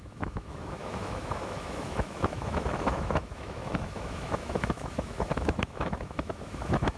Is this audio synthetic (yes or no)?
yes